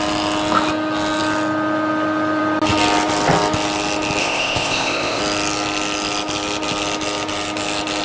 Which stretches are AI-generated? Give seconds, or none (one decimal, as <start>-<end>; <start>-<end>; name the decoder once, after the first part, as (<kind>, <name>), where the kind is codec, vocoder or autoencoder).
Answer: 4.2-5.2 (codec, ZipCodec)